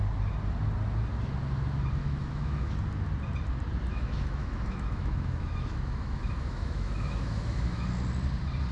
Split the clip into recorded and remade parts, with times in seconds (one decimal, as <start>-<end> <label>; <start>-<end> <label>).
0.0-2.0 recorded; 2.0-2.7 remade; 2.7-3.9 recorded; 3.9-7.8 remade; 7.8-8.7 recorded